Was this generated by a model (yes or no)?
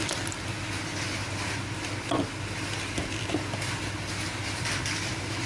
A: no